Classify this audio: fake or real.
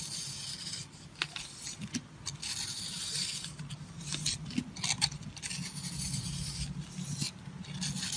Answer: real